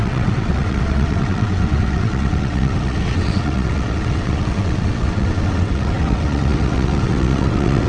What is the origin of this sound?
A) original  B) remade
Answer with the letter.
B